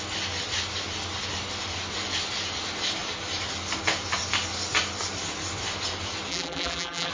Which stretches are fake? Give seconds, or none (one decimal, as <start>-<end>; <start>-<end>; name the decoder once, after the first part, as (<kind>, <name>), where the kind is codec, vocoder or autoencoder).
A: 6.3-7.1 (vocoder, BigVGAN v2)